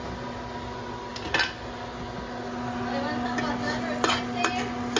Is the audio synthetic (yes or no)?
no